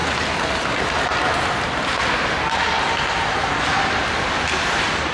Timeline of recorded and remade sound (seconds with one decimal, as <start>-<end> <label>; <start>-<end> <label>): 0.0-5.1 recorded